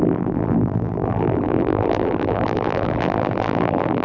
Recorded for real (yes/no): no